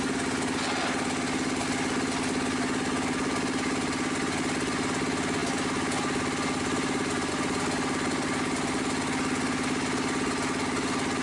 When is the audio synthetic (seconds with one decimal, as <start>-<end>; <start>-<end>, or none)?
none